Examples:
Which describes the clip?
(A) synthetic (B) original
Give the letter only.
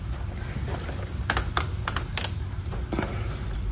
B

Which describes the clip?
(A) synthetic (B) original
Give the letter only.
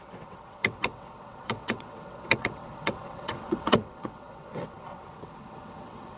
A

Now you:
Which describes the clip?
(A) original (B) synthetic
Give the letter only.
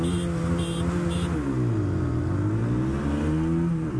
A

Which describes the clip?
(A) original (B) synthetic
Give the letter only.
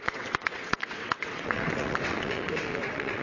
B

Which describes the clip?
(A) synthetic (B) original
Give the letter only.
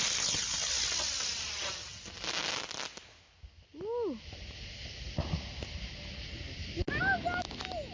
B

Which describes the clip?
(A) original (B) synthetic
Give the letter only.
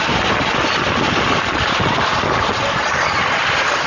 A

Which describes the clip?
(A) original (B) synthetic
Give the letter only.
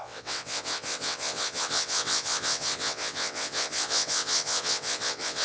B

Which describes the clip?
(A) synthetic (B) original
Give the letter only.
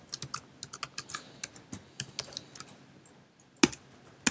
B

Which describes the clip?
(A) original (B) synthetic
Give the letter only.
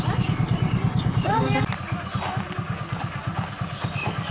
A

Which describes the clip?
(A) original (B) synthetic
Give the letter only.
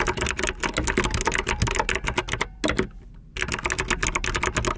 A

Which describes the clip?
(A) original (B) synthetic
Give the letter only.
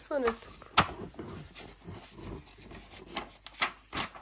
A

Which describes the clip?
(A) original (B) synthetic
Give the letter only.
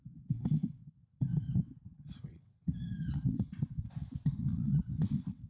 B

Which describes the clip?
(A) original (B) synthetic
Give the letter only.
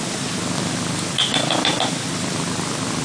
A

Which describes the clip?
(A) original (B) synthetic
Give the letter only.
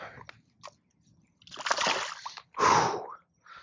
A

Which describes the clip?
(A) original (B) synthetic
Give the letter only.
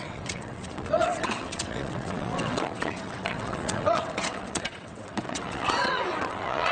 B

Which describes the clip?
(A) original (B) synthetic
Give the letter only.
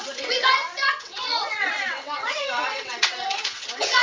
B